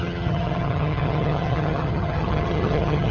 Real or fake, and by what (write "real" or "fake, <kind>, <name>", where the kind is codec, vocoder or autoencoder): fake, vocoder, HiFi-GAN